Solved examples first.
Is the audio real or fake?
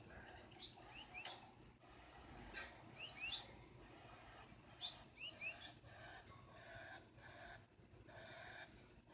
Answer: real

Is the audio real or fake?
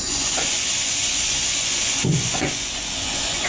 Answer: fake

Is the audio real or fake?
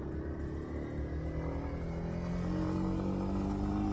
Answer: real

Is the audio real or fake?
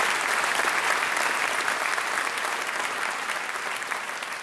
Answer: real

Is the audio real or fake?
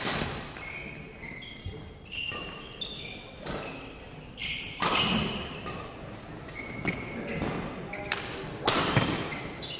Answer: real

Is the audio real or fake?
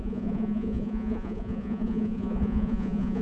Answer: fake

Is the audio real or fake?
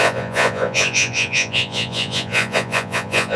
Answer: fake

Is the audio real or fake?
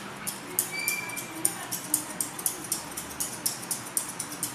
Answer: real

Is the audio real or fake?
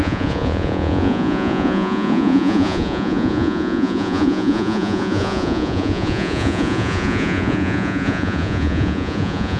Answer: fake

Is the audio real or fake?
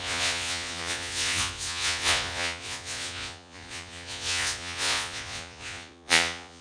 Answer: fake